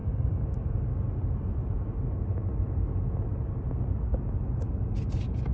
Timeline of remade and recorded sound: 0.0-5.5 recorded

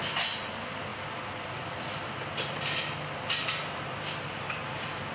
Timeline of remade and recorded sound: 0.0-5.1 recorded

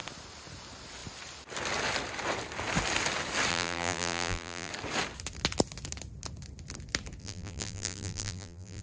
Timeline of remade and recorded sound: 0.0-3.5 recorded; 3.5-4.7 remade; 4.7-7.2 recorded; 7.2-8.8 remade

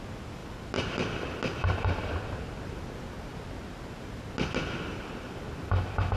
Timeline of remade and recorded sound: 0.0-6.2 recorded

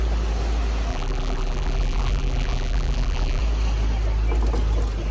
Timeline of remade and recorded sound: 0.0-0.9 recorded; 0.9-3.4 remade; 3.4-5.1 recorded

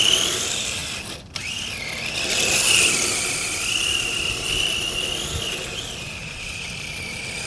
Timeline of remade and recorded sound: 0.0-7.5 recorded